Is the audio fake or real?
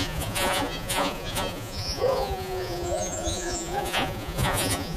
fake